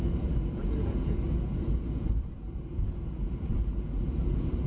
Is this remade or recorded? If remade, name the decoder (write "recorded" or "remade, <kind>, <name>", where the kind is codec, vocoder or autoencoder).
remade, vocoder, Vocos